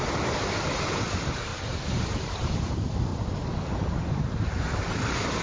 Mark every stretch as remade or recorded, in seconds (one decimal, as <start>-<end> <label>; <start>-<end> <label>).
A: 0.0-3.1 remade; 3.1-3.7 recorded; 3.7-5.4 remade